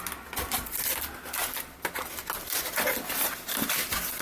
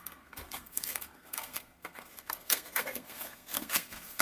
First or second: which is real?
first